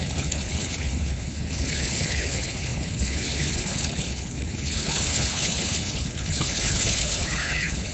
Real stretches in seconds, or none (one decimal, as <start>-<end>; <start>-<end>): none